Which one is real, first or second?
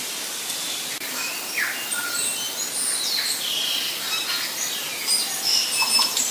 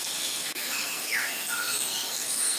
first